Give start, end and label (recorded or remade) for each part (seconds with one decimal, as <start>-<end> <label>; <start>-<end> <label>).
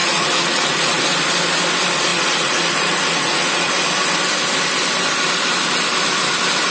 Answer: 0.0-1.0 remade; 1.0-2.1 recorded; 2.1-3.7 remade; 3.7-6.7 recorded